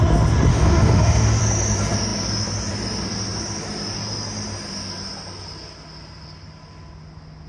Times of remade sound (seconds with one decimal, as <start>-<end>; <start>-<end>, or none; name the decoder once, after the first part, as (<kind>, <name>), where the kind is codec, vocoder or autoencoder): 0.5-1.4 (autoencoder, DAC-VAE)